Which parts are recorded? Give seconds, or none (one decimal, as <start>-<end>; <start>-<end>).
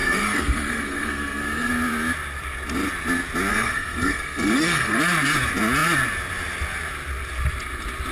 1.7-3.5; 5.0-8.1